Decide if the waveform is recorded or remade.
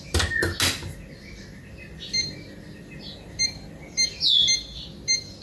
recorded